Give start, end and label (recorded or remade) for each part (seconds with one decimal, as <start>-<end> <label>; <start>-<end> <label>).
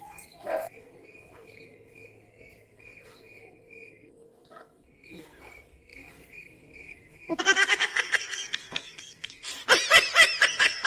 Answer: 0.0-9.6 remade; 9.6-10.5 recorded; 10.5-10.9 remade